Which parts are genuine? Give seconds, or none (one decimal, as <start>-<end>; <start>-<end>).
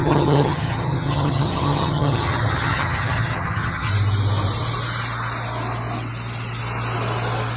3.9-7.6